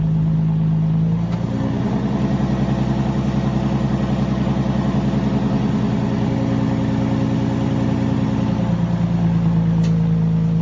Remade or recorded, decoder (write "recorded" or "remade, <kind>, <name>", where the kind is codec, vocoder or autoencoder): recorded